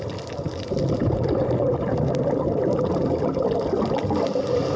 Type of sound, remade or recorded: remade